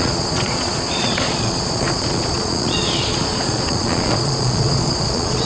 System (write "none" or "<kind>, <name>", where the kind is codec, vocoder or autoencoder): vocoder, Vocos